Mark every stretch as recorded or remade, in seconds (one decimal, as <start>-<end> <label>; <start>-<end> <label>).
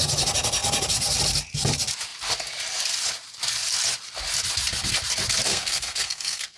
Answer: 0.0-5.5 recorded; 5.5-6.6 remade